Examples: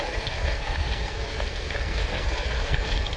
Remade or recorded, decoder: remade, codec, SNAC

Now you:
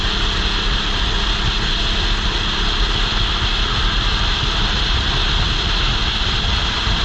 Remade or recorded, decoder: recorded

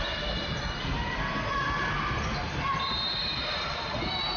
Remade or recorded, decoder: recorded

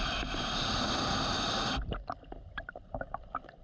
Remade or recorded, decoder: remade, vocoder, BigVGAN v2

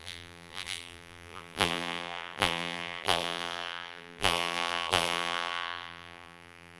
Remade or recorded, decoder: remade, vocoder, BigVGAN v2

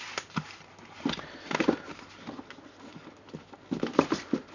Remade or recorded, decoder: recorded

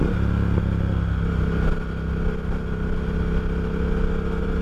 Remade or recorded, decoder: recorded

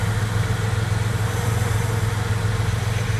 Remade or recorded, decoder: recorded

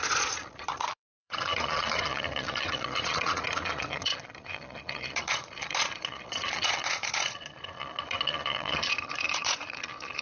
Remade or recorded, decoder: remade, vocoder, Vocos